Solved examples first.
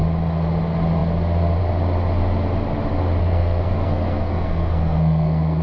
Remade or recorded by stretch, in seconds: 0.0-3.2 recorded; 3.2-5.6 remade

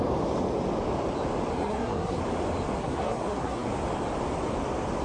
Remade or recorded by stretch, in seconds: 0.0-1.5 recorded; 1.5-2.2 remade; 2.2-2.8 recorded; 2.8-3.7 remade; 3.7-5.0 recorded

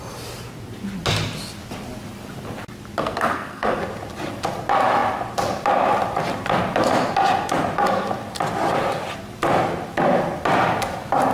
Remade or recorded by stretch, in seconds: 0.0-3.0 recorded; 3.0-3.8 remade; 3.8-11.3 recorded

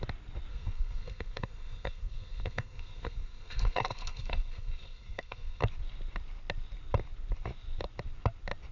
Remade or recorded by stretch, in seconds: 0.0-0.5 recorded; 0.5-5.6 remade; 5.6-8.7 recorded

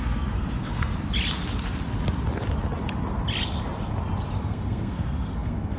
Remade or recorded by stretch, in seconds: 0.0-0.9 remade; 0.9-4.4 recorded; 4.4-5.8 remade